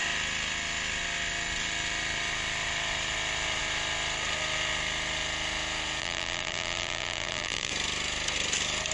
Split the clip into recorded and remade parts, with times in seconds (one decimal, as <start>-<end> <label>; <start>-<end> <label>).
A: 0.0-6.0 recorded; 6.0-7.7 remade; 7.7-8.9 recorded